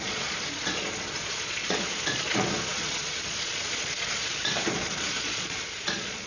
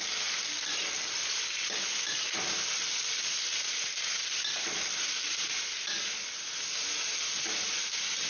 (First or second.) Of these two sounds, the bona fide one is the second